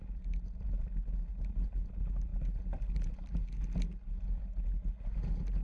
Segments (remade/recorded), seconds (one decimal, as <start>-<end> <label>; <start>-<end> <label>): 0.0-5.6 recorded